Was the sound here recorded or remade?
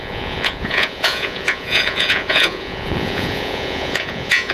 remade